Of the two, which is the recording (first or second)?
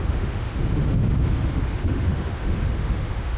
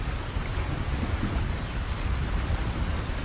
second